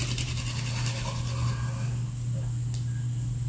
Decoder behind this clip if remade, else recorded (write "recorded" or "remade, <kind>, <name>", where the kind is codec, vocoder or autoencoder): recorded